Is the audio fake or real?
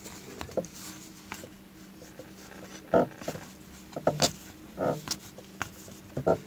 real